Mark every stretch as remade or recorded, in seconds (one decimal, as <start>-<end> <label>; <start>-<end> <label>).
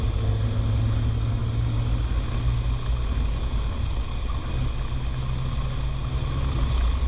0.0-7.1 recorded